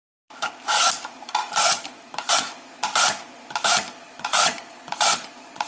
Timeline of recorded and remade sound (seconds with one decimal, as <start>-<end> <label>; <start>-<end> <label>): 0.0-1.4 recorded; 1.4-2.3 remade; 2.3-4.1 recorded; 4.1-5.7 remade